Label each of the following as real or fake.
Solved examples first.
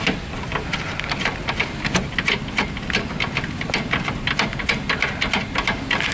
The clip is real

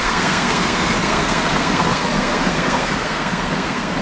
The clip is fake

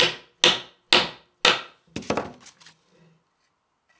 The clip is real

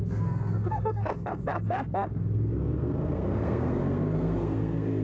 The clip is fake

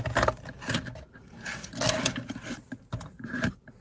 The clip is real